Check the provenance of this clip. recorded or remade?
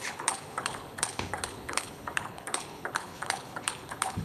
remade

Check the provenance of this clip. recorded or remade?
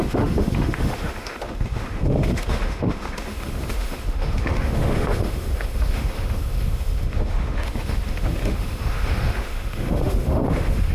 remade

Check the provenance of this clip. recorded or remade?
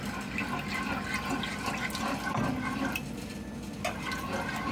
recorded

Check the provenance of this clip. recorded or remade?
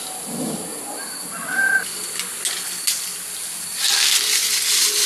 recorded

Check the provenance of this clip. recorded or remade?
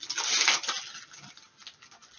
recorded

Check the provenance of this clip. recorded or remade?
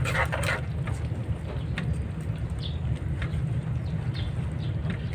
recorded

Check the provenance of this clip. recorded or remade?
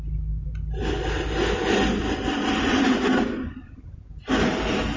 recorded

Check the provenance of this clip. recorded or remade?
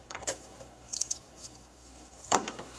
remade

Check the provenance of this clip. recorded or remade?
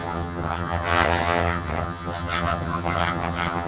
remade